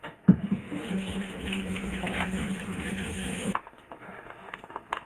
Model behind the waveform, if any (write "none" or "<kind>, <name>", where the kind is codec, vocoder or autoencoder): autoencoder, DAC-VAE